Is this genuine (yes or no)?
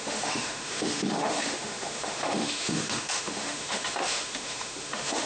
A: no